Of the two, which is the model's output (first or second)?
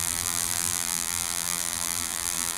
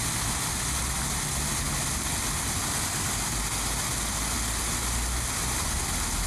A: first